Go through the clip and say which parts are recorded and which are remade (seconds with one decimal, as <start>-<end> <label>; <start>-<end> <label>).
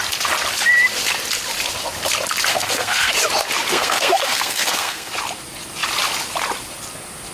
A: 0.0-2.5 recorded; 2.5-3.1 remade; 3.1-3.7 recorded; 3.7-5.1 remade; 5.1-7.3 recorded